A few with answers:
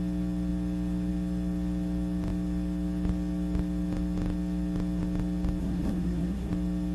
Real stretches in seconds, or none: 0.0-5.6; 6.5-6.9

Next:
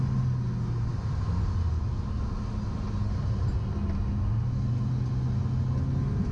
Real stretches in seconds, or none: 0.0-6.3

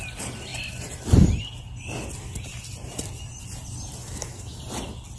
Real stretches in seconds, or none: 0.0-4.0; 4.6-5.2

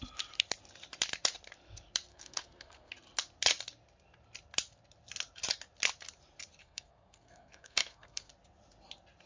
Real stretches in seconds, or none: 0.0-2.1; 2.9-6.6; 8.3-9.3

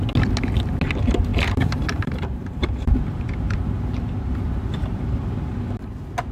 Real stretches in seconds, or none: 0.0-1.3; 3.6-6.3

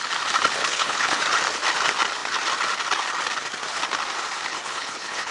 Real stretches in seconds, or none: 0.0-0.6; 1.2-4.5

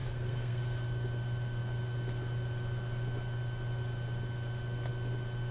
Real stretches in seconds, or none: 0.6-5.5

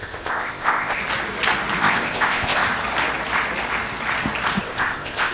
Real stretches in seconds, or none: 1.0-1.8; 2.6-4.6